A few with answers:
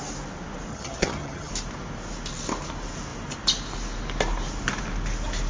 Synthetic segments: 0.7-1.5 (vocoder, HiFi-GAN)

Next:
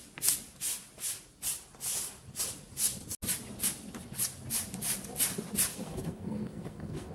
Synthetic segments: 5.7-7.1 (codec, SNAC)

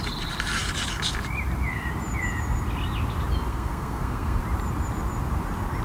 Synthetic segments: 3.5-4.4 (codec, SNAC)

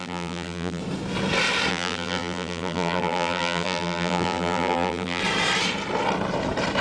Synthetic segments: 0.0-0.8 (vocoder, BigVGAN v2); 1.7-5.2

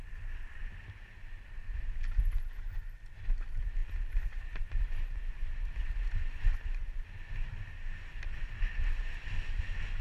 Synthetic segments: 3.8-8.0 (vocoder, BigVGAN v2)

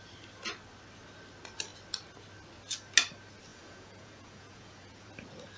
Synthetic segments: 3.5-5.1 (vocoder, Vocos)

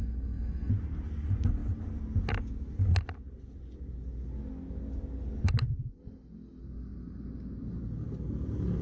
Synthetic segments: 0.0-0.7 (codec, SNAC)